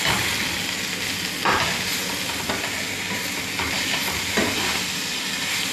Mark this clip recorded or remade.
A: recorded